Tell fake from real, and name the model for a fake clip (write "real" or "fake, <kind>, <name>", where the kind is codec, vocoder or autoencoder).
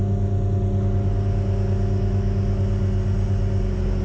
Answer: real